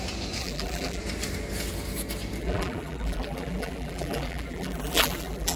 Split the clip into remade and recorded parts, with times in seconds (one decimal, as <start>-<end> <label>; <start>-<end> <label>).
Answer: 0.0-0.4 recorded; 0.4-1.0 remade; 1.0-2.4 recorded; 2.4-5.6 remade